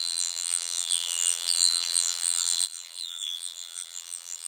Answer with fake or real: fake